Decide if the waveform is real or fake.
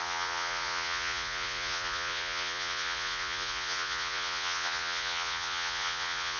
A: fake